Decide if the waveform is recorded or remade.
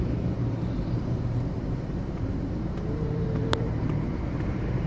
remade